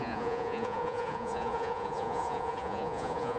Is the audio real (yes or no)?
no